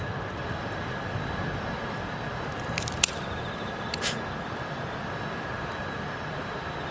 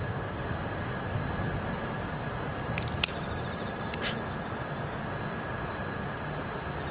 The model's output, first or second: first